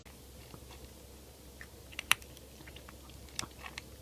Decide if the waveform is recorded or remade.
recorded